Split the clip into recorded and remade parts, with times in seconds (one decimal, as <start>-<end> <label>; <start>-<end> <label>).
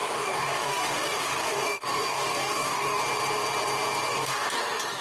0.0-3.0 remade; 3.0-4.1 recorded; 4.1-4.6 remade; 4.6-5.0 recorded